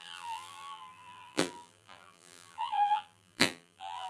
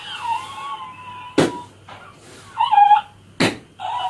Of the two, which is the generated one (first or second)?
first